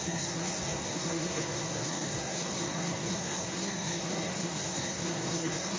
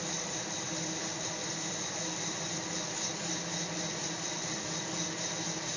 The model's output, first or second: first